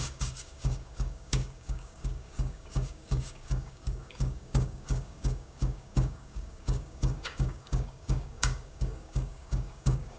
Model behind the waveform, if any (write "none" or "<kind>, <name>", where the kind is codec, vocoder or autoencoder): codec, DAC